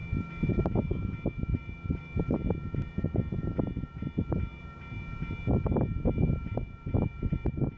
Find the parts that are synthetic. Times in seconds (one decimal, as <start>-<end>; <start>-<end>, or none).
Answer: none